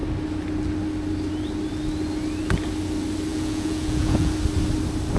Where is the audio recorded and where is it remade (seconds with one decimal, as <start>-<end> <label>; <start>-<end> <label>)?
0.0-3.3 recorded; 3.3-4.3 remade; 4.3-5.2 recorded